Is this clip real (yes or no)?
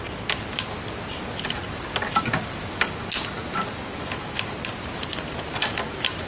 yes